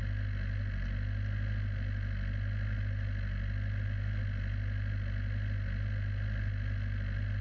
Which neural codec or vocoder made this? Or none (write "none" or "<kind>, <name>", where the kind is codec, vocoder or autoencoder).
none